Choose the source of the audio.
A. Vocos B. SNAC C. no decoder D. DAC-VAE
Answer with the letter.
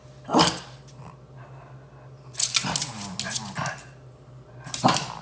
C